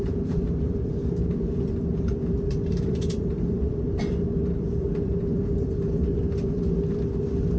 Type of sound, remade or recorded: remade